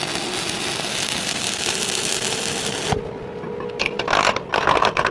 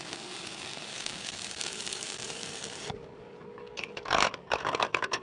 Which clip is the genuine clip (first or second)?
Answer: first